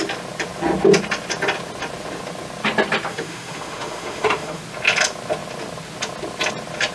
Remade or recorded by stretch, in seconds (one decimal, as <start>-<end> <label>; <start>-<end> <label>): 0.0-3.1 recorded; 3.1-4.6 remade; 4.6-6.9 recorded